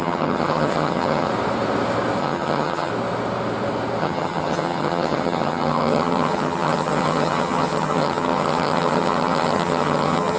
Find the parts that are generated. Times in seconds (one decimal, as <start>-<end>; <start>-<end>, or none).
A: 0.0-1.3; 2.2-2.9; 4.0-10.4